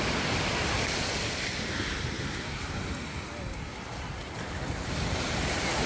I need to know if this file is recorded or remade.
recorded